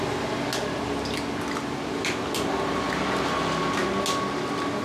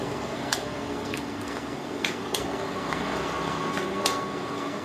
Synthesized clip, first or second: second